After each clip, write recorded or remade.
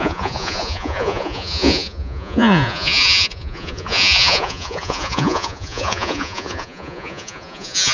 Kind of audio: remade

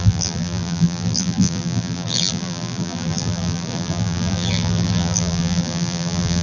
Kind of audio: remade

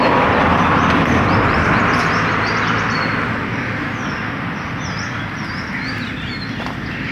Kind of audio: recorded